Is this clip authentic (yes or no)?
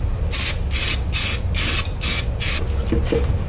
yes